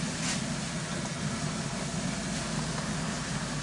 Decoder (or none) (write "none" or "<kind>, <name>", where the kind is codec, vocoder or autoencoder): none